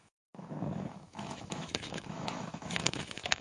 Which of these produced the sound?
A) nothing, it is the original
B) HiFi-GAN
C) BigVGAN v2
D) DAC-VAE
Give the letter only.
D